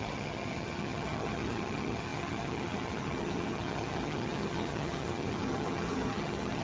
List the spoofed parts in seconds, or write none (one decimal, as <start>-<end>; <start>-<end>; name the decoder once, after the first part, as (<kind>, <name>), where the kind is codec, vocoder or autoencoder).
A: 0.0-6.6 (vocoder, HiFi-GAN)

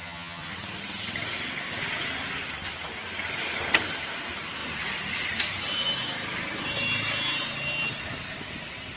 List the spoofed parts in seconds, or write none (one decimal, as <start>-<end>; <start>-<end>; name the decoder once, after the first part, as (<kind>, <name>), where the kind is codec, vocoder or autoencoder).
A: 0.0-0.5 (vocoder, HiFi-GAN)

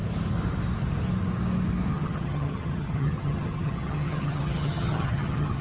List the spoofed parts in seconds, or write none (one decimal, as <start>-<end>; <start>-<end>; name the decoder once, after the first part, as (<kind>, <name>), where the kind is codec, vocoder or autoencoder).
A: 1.9-5.6 (vocoder, HiFi-GAN)

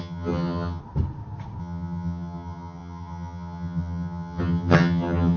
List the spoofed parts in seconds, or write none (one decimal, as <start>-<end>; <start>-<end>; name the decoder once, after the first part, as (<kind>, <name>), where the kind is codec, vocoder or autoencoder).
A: 0.0-0.8 (vocoder, HiFi-GAN); 1.6-5.4

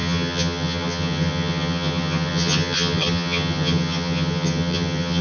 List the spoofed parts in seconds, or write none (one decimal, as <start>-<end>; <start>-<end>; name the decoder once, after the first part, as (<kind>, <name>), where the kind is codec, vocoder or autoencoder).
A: 0.0-5.2 (vocoder, HiFi-GAN)

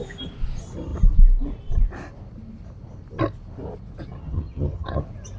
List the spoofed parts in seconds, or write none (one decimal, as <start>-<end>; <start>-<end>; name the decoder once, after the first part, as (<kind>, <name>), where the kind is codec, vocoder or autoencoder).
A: 4.2-5.0 (vocoder, HiFi-GAN)

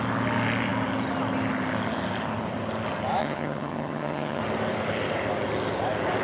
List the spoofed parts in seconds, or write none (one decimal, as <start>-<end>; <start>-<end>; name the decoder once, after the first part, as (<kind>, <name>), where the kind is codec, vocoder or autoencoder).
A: 3.2-4.4 (vocoder, HiFi-GAN)

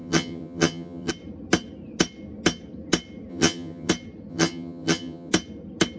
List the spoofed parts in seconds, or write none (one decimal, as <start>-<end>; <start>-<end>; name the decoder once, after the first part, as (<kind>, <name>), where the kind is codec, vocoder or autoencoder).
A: 0.0-1.1 (vocoder, HiFi-GAN); 3.3-3.9; 4.3-5.3